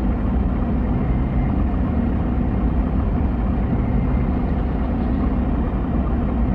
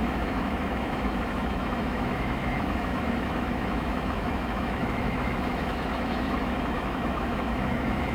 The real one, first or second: first